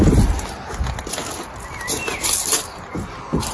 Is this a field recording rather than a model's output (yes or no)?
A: yes